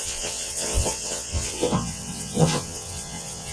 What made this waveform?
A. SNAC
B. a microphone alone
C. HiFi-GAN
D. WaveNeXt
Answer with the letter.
D